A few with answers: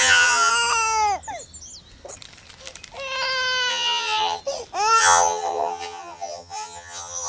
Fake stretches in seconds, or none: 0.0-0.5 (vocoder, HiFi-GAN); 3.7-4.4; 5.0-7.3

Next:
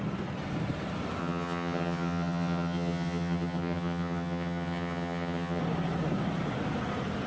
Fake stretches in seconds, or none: 1.2-5.6 (vocoder, HiFi-GAN)

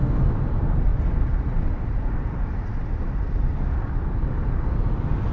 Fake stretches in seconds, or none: none

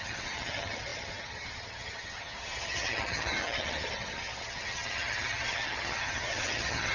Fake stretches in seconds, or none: 0.0-6.9 (vocoder, HiFi-GAN)

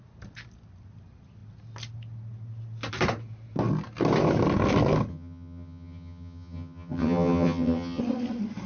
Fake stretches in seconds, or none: 5.1-8.0 (vocoder, HiFi-GAN)

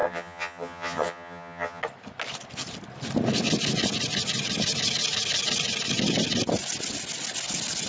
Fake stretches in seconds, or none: 0.0-1.8 (vocoder, HiFi-GAN)

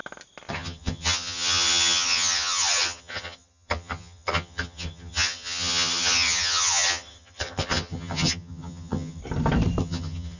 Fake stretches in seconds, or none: 0.5-9.2 (vocoder, HiFi-GAN); 9.8-10.4